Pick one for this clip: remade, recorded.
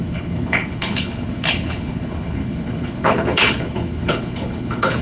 remade